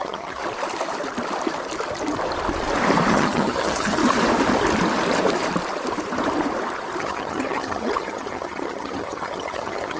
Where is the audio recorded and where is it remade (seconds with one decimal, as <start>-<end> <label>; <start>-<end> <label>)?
0.0-0.4 remade; 0.4-3.1 recorded; 3.1-4.0 remade; 4.0-7.0 recorded; 7.0-10.0 remade